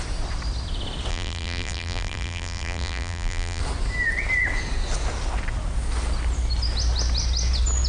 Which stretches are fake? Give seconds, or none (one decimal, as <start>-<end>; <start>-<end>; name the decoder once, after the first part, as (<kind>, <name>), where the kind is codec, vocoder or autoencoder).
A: 1.1-3.6 (vocoder, BigVGAN v2)